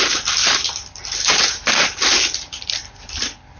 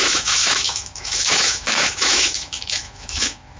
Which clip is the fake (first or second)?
second